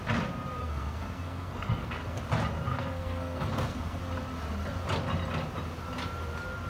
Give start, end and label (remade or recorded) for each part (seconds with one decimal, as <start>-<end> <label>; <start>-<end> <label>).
0.0-0.6 recorded; 0.6-2.2 remade; 2.2-2.7 recorded; 2.7-4.0 remade; 4.0-6.7 recorded